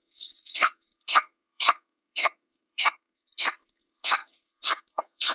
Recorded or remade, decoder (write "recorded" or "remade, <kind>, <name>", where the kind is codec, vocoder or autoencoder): remade, codec, SNAC